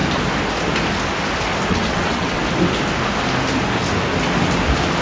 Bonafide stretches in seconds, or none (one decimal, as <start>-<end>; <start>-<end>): 0.0-1.7; 2.4-5.0